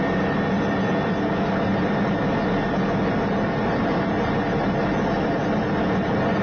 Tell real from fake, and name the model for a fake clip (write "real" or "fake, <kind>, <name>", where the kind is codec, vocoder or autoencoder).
real